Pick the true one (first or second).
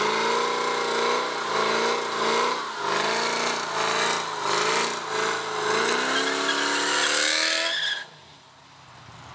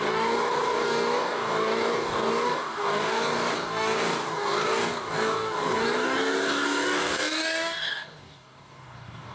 first